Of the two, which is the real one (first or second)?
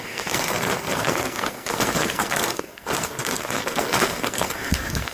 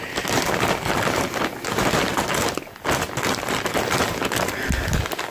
second